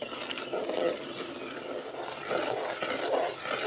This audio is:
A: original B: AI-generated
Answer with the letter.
A